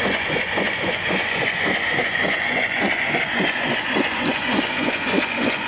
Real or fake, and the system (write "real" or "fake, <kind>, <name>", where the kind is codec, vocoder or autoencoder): fake, vocoder, Vocos